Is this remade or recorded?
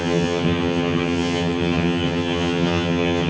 remade